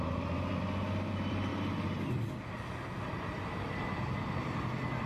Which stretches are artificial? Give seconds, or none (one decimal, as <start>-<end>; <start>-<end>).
0.0-1.5; 2.1-5.1